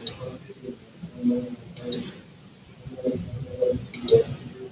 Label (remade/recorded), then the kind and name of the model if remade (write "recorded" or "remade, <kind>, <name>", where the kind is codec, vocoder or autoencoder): recorded